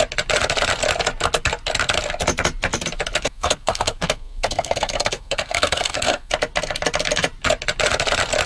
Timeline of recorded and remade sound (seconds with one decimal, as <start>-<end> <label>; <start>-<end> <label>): 0.0-3.2 recorded; 3.2-6.3 remade; 6.3-8.5 recorded